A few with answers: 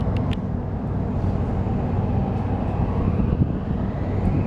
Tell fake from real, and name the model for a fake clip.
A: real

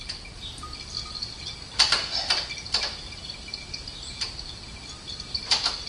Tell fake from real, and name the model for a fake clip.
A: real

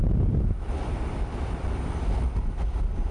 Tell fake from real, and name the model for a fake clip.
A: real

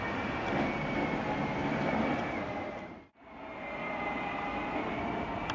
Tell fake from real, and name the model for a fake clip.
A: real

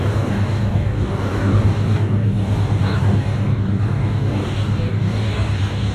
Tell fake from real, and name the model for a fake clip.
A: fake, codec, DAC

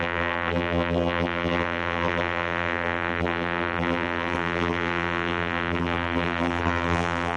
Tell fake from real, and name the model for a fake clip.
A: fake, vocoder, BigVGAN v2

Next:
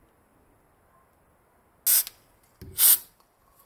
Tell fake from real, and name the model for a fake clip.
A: real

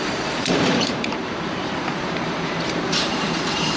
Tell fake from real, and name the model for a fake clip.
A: fake, vocoder, BigVGAN v2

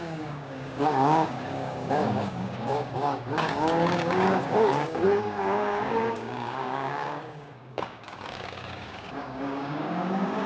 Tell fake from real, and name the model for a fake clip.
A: fake, codec, DAC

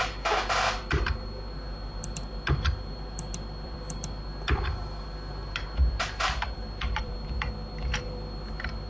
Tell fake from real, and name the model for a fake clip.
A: fake, vocoder, BigVGAN v2